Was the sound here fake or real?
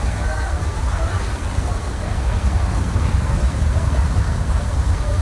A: fake